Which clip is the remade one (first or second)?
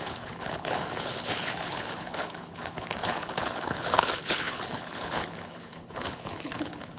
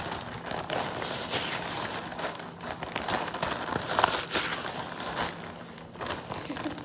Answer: first